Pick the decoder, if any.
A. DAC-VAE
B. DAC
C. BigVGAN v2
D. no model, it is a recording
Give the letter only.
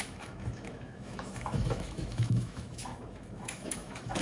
A